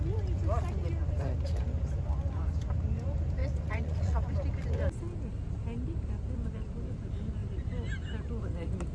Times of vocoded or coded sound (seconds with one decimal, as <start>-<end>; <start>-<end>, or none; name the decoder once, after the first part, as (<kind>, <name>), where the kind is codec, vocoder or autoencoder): 3.4-4.2 (vocoder, Vocos)